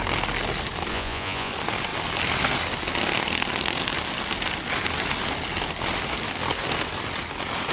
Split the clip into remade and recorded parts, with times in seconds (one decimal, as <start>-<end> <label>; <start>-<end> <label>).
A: 0.0-0.9 recorded; 0.9-1.5 remade; 1.5-7.7 recorded